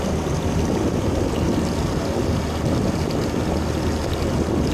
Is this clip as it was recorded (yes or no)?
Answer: yes